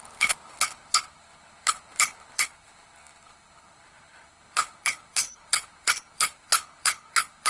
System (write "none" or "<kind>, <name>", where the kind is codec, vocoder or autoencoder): codec, HILCodec